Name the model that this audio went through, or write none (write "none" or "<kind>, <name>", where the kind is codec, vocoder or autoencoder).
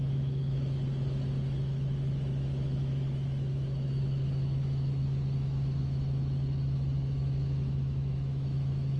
autoencoder, DAC-VAE